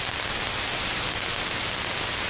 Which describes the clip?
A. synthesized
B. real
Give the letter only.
B